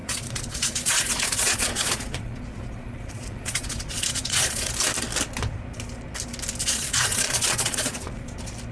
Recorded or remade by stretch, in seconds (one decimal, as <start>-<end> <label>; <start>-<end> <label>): 0.0-4.7 remade; 4.7-6.6 recorded; 6.6-8.2 remade; 8.2-8.7 recorded